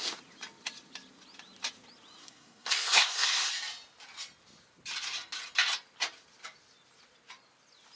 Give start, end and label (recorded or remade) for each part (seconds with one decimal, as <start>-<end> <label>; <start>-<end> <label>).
0.0-2.2 recorded; 2.2-3.5 remade; 3.5-8.0 recorded